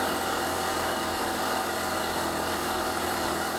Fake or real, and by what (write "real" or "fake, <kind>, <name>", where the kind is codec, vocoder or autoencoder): fake, codec, DAC